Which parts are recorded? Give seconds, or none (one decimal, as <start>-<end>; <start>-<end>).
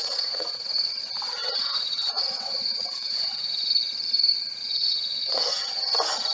0.7-1.4; 3.7-4.7; 5.7-6.3